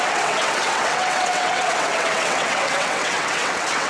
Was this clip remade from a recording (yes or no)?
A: yes